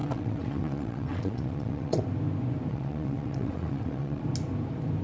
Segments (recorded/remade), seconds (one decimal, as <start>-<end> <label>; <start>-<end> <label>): 0.0-2.0 remade; 2.0-2.7 recorded; 2.7-4.2 remade; 4.2-5.0 recorded